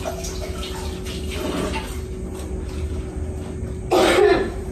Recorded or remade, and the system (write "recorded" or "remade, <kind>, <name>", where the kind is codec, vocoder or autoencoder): recorded